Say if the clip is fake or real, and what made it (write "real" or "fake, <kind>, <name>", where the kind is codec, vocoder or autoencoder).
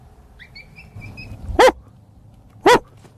real